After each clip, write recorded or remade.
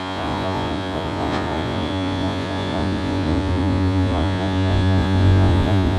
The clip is remade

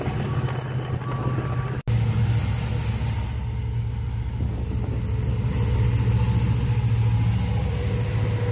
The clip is recorded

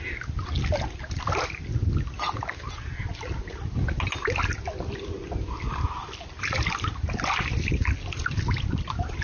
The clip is recorded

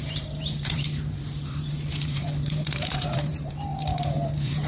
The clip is remade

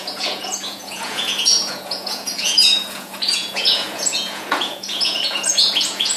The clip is remade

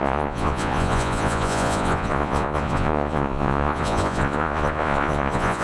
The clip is remade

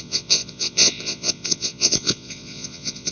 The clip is remade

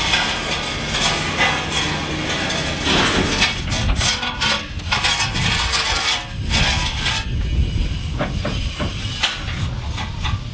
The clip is recorded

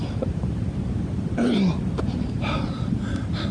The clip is remade